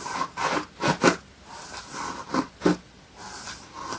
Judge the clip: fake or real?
real